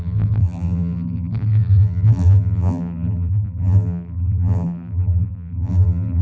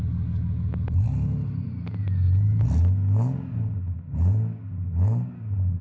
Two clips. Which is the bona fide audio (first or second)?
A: second